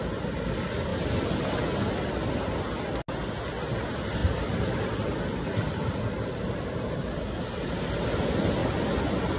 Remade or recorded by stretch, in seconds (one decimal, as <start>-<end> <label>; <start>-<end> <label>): 0.0-4.2 recorded; 4.2-7.8 remade; 7.8-8.6 recorded; 8.6-9.4 remade